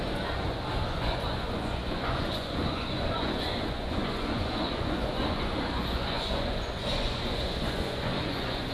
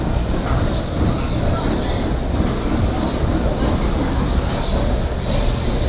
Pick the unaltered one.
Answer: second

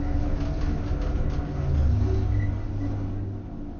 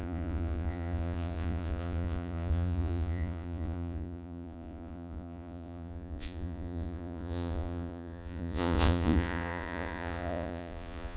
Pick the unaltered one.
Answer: first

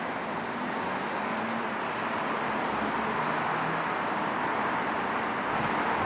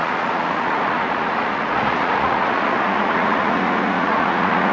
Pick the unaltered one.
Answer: first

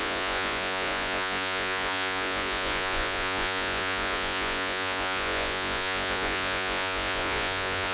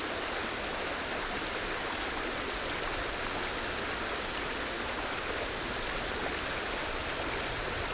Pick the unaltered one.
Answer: second